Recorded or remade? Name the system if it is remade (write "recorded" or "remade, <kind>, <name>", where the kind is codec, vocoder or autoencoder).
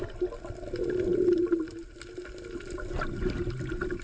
recorded